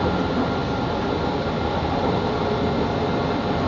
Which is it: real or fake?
real